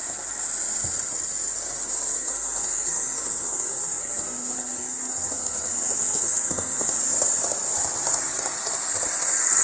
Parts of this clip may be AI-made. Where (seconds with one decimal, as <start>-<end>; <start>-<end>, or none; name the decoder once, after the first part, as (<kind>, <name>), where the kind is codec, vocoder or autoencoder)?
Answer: 2.2-7.0 (codec, SNAC)